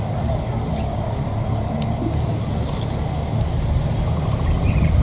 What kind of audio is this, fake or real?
real